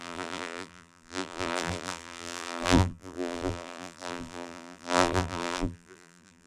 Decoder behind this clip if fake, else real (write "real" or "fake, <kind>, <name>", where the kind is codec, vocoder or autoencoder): fake, vocoder, BigVGAN v2